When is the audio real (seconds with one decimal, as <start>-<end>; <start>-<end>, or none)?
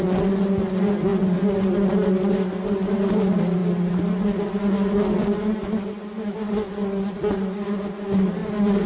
0.0-8.9